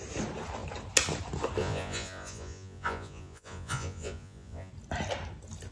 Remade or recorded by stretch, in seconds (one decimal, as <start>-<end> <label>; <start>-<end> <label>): 0.0-1.6 recorded; 1.6-4.7 remade; 4.7-5.7 recorded